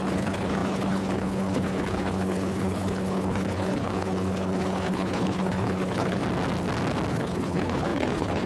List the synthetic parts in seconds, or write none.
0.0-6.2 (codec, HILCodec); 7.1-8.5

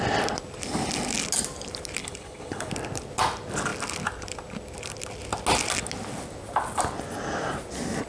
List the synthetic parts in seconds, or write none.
2.0-2.7 (codec, HILCodec)